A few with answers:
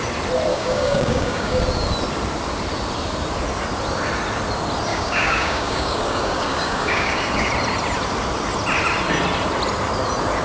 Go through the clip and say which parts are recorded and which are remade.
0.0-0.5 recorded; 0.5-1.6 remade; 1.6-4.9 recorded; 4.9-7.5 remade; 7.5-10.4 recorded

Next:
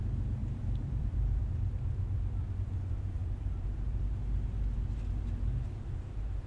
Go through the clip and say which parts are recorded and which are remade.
0.0-0.4 recorded; 0.4-1.4 remade; 1.4-3.2 recorded; 3.2-4.0 remade; 4.0-6.5 recorded

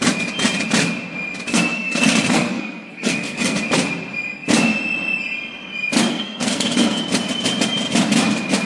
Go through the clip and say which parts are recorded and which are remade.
0.0-1.5 recorded; 1.5-3.6 remade; 3.6-6.1 recorded; 6.1-7.0 remade; 7.0-8.7 recorded

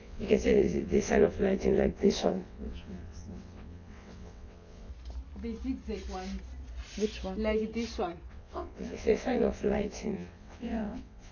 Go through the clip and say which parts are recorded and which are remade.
0.0-4.9 remade; 4.9-8.3 recorded; 8.3-11.3 remade

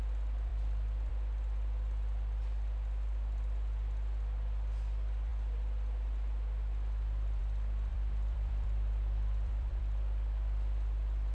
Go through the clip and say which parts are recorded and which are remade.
0.0-7.9 recorded; 7.9-9.8 remade; 9.8-11.3 recorded

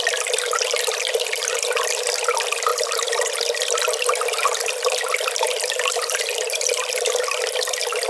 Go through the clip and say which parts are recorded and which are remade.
0.0-2.7 recorded; 2.7-3.3 remade; 3.3-8.1 recorded

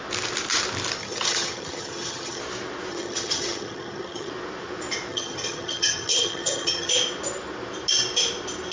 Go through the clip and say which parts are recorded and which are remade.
0.0-1.0 recorded; 1.0-2.4 remade; 2.4-2.9 recorded; 2.9-4.3 remade; 4.3-5.1 recorded; 5.1-6.9 remade; 6.9-8.7 recorded

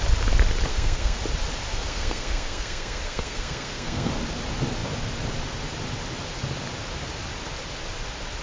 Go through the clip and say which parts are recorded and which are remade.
0.0-0.7 recorded; 0.7-1.2 remade; 1.2-1.9 recorded; 1.9-4.1 remade; 4.1-8.4 recorded